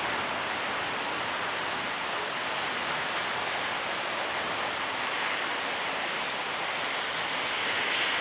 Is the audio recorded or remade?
recorded